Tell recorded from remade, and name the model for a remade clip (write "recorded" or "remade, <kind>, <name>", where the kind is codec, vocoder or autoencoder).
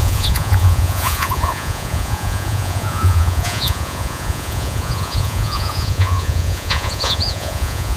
remade, vocoder, Vocos